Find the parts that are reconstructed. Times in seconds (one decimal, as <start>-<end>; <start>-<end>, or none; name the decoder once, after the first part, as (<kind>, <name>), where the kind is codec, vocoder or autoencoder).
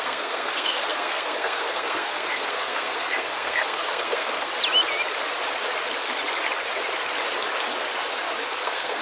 0.0-4.5 (codec, SNAC); 8.6-9.0